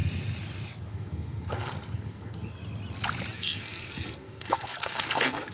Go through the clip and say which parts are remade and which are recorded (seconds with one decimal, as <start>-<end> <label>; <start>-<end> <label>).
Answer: 0.0-0.9 recorded; 0.9-2.6 remade; 2.6-3.3 recorded; 3.3-5.5 remade